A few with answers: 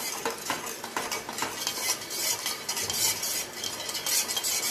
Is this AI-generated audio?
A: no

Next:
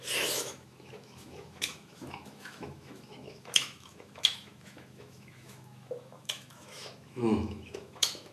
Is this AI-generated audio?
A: yes